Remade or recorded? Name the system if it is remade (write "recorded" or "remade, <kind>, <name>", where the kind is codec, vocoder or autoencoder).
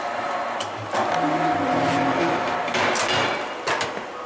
recorded